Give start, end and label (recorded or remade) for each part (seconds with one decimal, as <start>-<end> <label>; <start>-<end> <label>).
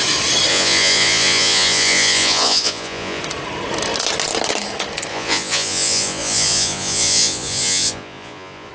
0.0-0.5 recorded; 0.5-3.2 remade; 3.2-5.1 recorded; 5.1-8.7 remade